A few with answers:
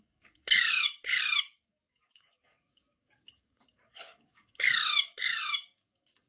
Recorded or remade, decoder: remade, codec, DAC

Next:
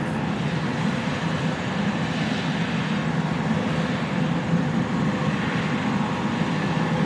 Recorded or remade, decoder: recorded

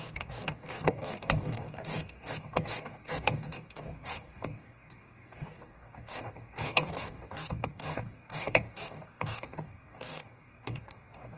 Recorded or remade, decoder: remade, codec, DAC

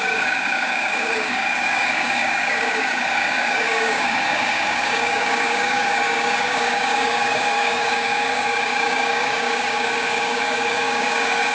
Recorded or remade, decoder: remade, codec, DAC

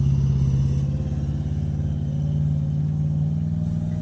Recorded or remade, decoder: recorded